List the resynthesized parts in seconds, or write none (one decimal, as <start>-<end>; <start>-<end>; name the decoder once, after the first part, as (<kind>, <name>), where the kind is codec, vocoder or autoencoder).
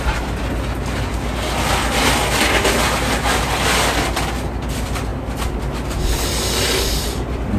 none